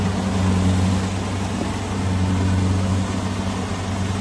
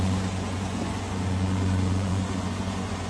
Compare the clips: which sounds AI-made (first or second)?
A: second